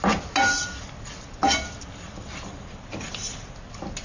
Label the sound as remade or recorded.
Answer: recorded